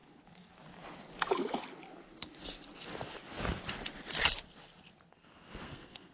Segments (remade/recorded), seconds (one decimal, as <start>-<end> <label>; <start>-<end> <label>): 0.0-5.1 recorded; 5.1-6.1 remade